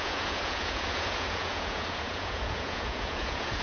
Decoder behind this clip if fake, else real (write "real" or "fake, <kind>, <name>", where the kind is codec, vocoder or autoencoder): fake, vocoder, Vocos